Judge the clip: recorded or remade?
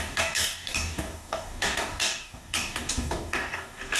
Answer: remade